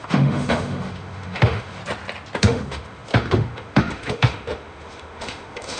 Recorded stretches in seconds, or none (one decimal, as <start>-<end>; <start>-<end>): 1.8-2.4

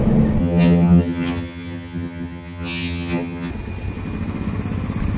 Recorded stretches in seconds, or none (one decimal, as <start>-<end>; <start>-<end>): 0.0-0.4; 3.5-5.2